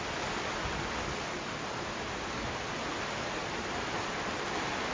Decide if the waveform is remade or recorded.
recorded